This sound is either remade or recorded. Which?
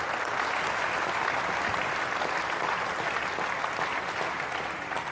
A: recorded